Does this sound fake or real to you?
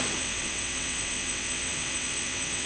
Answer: fake